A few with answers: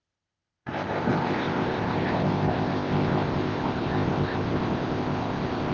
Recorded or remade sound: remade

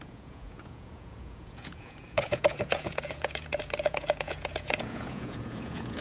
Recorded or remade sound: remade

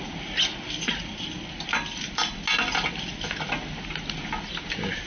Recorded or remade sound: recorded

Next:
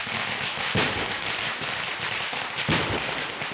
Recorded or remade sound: recorded